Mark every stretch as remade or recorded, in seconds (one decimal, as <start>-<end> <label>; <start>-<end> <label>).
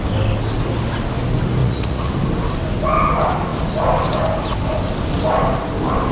0.0-1.6 recorded; 1.6-2.1 remade; 2.1-6.1 recorded